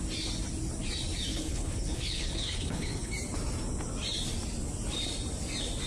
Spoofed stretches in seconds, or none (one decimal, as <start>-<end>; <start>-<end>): 1.3-3.1